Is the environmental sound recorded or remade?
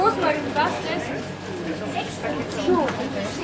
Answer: recorded